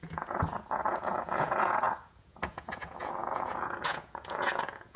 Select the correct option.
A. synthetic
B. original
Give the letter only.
A